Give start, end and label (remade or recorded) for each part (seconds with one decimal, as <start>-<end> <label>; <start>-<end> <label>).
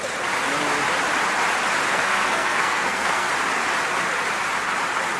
0.0-1.9 recorded; 1.9-3.3 remade; 3.3-5.2 recorded